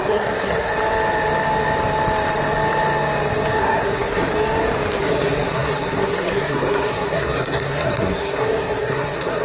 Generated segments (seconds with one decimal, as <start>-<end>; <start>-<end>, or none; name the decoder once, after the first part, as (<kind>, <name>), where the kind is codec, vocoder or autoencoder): 0.0-0.7 (codec, SNAC); 3.6-4.3; 5.0-9.4